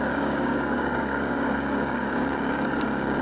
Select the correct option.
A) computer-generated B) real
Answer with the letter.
A